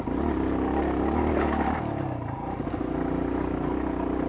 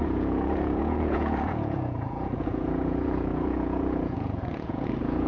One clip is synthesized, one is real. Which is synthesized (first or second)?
second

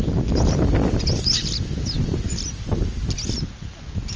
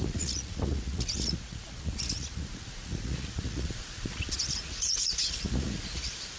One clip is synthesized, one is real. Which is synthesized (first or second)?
second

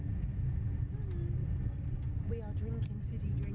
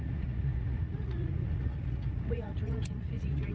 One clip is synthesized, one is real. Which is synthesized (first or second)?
second